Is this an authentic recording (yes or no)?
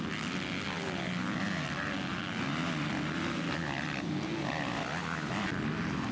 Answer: yes